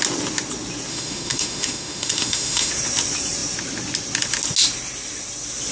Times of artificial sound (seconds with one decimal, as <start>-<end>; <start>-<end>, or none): 0.9-2.7